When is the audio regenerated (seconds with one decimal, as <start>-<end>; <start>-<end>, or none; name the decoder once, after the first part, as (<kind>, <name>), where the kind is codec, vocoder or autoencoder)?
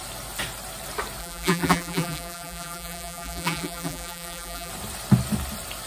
1.2-4.7 (vocoder, BigVGAN v2)